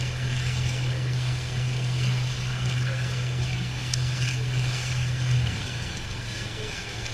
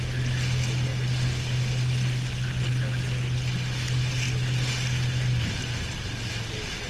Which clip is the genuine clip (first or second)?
second